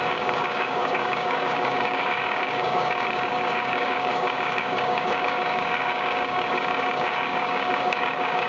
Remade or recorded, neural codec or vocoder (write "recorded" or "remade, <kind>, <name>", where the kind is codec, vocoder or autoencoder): remade, codec, DAC